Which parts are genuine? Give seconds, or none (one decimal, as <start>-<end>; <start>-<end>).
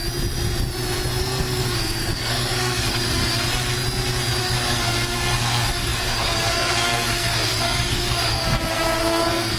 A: 0.0-1.2; 3.2-4.4